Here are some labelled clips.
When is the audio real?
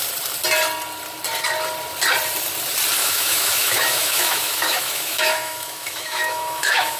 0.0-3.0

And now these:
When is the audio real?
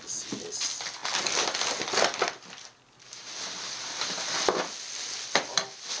0.0-6.0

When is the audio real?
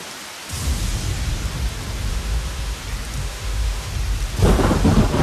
0.0-2.1; 2.8-3.2; 3.9-5.2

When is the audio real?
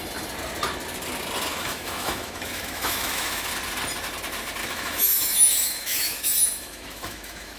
0.0-1.5; 3.5-4.6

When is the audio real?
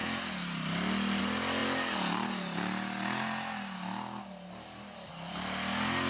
0.0-6.1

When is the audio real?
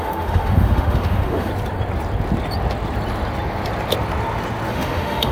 1.5-4.7